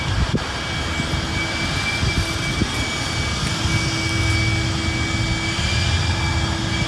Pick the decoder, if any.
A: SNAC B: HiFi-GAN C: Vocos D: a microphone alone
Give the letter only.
D